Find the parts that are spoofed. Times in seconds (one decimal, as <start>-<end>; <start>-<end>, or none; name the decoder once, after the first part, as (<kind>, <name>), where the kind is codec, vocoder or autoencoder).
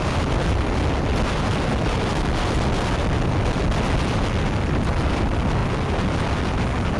none